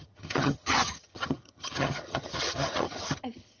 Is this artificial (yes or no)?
yes